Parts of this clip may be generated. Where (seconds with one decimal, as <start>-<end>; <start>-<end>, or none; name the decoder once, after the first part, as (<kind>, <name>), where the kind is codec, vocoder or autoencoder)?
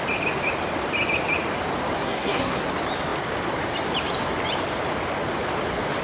2.0-2.7 (codec, SNAC)